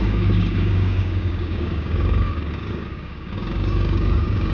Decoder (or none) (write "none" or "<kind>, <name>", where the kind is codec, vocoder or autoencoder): codec, DAC